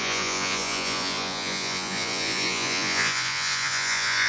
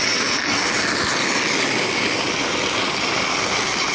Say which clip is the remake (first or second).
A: first